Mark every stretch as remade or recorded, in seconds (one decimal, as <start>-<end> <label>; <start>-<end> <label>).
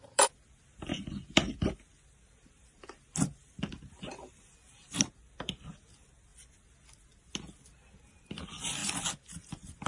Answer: 0.0-6.3 remade; 6.3-8.0 recorded; 8.0-9.9 remade